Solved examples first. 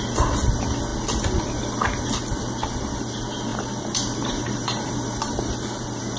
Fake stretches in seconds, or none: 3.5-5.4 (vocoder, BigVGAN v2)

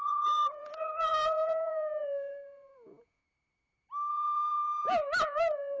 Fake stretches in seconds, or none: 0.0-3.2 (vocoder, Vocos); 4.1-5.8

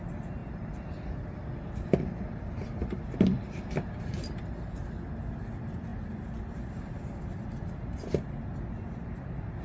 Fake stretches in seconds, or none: none

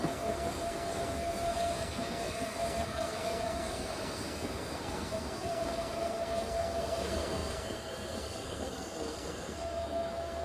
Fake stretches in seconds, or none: 0.0-10.4 (codec, SNAC)

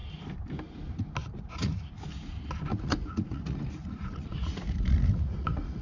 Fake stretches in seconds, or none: 1.2-1.9 (vocoder, Vocos); 2.7-5.8